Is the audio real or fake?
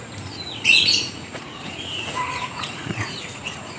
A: fake